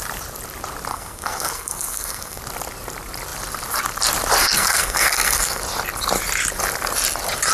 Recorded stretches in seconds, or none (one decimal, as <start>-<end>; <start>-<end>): 0.0-0.9; 2.4-4.4; 5.6-7.5